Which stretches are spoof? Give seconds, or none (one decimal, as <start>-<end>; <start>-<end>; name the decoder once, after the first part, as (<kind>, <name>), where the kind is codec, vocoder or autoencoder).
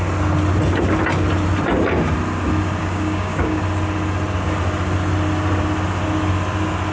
2.8-3.6 (codec, DAC)